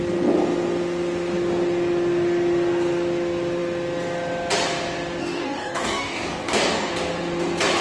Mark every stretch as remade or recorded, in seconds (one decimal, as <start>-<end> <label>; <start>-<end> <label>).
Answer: 0.0-5.2 recorded; 5.2-6.9 remade; 6.9-7.8 recorded